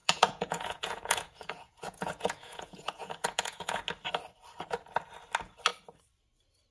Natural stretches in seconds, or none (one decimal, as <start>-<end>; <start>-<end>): 3.8-6.7